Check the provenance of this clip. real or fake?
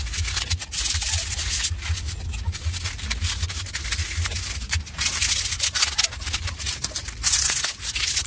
real